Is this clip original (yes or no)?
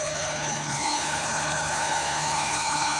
no